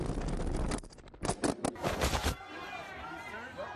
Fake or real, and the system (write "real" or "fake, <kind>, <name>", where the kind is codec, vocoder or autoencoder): real